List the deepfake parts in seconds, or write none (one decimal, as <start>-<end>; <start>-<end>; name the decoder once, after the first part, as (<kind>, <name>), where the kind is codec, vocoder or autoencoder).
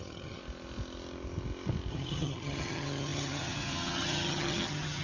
0.0-0.4 (vocoder, HiFi-GAN); 1.9-5.0